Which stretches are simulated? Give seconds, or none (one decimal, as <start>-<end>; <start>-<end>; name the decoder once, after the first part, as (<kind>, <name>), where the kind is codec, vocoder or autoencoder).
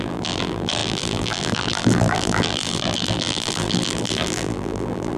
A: 0.0-5.2 (vocoder, BigVGAN v2)